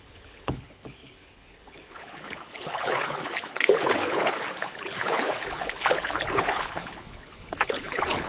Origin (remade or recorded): remade